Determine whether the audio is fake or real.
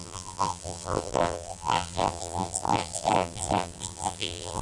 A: fake